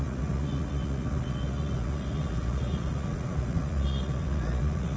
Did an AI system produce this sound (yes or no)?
yes